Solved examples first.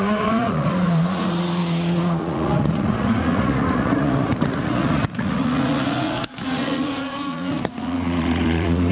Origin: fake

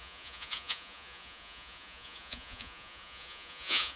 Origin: fake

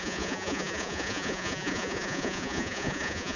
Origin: fake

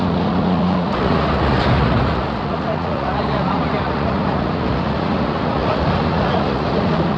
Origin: fake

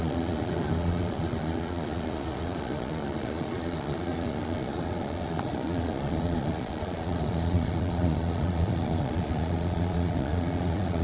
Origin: fake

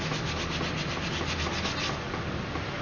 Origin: real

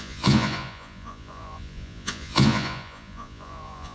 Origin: fake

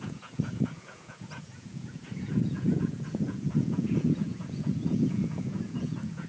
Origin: fake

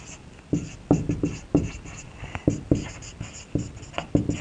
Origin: real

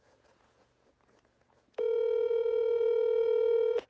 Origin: fake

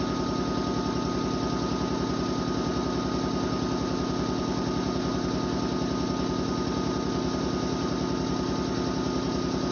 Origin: real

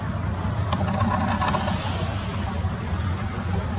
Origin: real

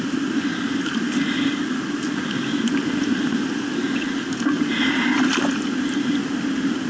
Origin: real